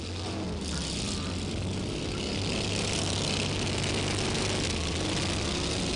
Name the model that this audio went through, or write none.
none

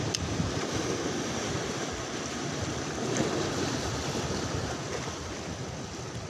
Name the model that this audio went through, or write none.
none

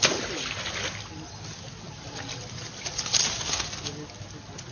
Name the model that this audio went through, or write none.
none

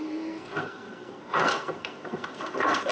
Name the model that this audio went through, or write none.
codec, SNAC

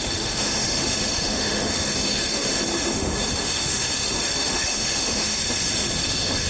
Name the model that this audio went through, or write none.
autoencoder, DAC-VAE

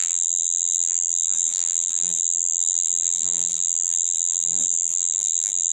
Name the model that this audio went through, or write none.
vocoder, BigVGAN v2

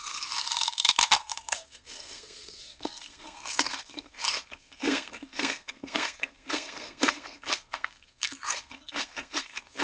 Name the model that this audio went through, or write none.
codec, SNAC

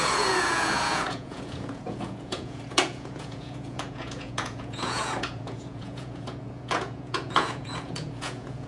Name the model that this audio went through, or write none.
vocoder, Vocos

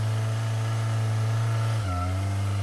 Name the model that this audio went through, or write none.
none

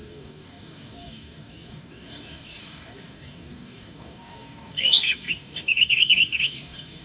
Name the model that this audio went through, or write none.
codec, DAC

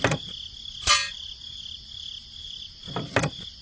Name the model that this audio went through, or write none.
none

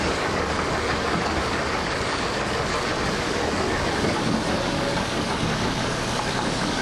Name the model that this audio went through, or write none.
codec, DAC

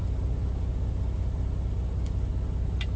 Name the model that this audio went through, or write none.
none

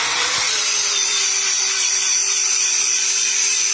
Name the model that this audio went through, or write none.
vocoder, BigVGAN v2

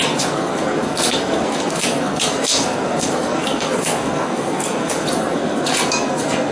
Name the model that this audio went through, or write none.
codec, SNAC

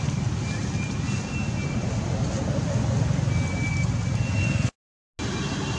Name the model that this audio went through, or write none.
none